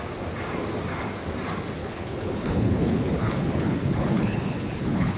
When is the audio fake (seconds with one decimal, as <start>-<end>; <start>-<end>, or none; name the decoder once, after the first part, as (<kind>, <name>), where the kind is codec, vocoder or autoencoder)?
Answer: 1.8-5.2 (codec, HILCodec)